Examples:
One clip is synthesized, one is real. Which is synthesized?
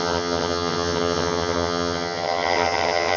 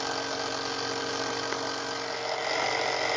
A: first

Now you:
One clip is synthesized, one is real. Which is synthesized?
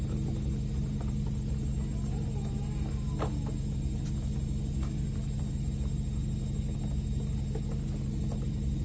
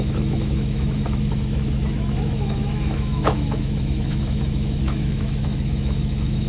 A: second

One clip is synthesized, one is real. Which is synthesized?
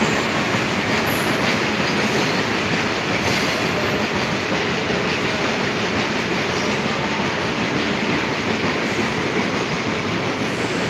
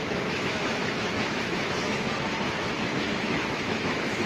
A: second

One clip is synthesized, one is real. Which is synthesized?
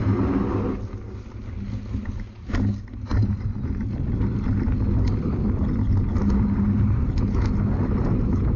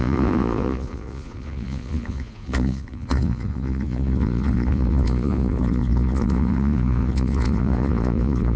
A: second